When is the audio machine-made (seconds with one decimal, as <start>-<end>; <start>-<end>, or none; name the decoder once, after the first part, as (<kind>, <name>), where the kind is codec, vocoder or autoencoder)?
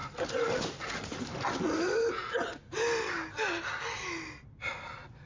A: none